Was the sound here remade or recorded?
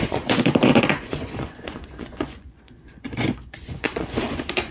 remade